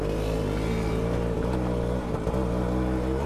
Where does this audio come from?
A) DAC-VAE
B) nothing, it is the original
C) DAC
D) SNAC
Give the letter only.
B